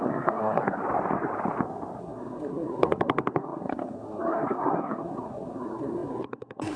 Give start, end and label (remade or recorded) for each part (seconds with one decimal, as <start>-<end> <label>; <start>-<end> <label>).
0.0-0.8 remade; 0.8-2.0 recorded; 2.0-6.8 remade

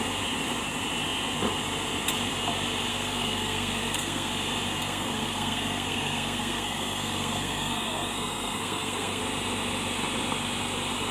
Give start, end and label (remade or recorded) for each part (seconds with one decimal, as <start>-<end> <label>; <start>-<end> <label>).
0.0-2.9 recorded; 2.9-4.3 remade; 4.3-4.8 recorded; 4.8-9.2 remade; 9.2-11.1 recorded

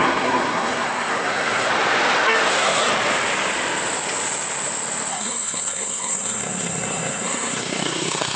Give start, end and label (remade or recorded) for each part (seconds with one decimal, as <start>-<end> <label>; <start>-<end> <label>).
0.0-1.7 remade; 1.7-2.5 recorded; 2.5-2.9 remade; 2.9-5.1 recorded; 5.1-8.4 remade

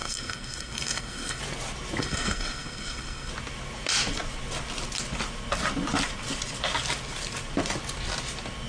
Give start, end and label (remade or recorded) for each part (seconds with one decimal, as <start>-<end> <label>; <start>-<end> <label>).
0.0-1.4 remade; 1.4-2.0 recorded; 2.0-3.3 remade; 3.3-8.7 recorded

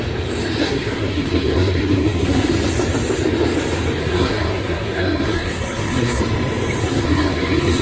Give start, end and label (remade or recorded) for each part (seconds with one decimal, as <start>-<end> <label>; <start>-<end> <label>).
0.0-0.6 recorded; 0.6-2.5 remade; 2.5-4.0 recorded; 4.0-6.2 remade; 6.2-6.8 recorded; 6.8-7.8 remade